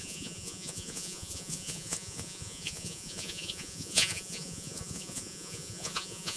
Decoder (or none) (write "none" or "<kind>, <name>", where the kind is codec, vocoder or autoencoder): vocoder, Vocos